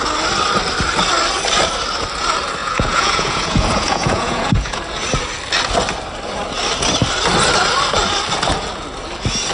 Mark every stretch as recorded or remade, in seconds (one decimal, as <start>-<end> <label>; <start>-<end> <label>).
0.0-2.6 recorded; 2.6-4.8 remade; 4.8-9.5 recorded